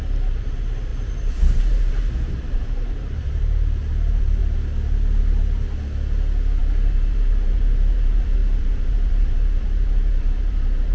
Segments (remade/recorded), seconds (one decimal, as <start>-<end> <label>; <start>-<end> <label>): 0.0-4.4 remade; 4.4-6.6 recorded; 6.6-10.9 remade